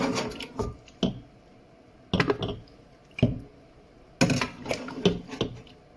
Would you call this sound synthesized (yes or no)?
no